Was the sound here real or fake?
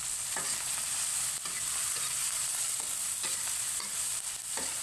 real